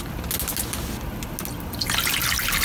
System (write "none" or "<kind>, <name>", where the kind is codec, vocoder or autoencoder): none